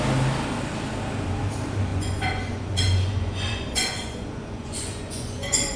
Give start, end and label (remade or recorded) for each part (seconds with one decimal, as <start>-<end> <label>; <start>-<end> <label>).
0.0-1.9 recorded; 1.9-5.8 remade